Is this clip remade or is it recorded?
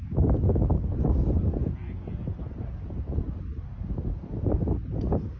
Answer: recorded